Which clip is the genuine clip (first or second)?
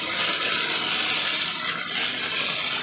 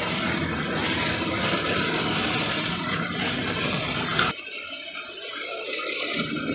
first